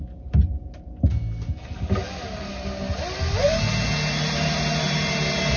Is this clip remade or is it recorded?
recorded